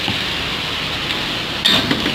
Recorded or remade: recorded